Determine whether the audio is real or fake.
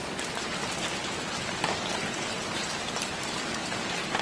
real